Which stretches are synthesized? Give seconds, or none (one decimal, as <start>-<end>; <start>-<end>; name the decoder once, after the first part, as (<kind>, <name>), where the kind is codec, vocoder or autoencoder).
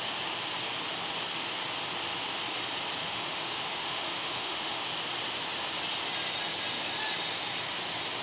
3.0-4.9 (autoencoder, DAC-VAE)